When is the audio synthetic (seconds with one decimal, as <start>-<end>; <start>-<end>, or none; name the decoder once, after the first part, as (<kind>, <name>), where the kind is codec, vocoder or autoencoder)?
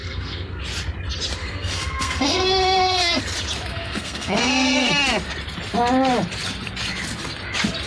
0.0-0.6 (codec, SNAC); 1.4-3.2; 3.7-4.9